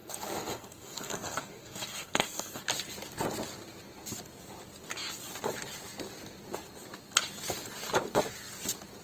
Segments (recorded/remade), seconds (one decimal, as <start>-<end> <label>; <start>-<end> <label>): 0.0-2.6 remade; 2.6-9.0 recorded